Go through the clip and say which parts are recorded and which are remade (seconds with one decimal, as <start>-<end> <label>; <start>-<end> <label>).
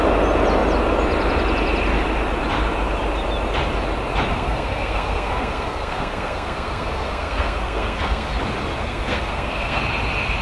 0.0-4.3 recorded; 4.3-8.4 remade; 8.4-8.8 recorded; 8.8-9.8 remade; 9.8-10.4 recorded